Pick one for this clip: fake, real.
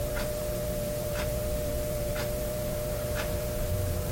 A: fake